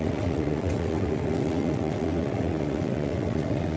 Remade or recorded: remade